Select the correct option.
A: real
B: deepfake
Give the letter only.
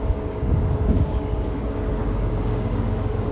B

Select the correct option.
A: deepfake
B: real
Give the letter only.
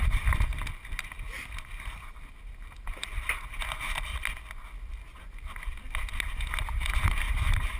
B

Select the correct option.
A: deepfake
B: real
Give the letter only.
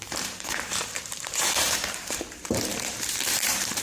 A